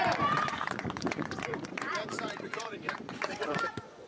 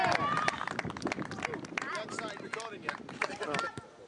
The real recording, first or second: second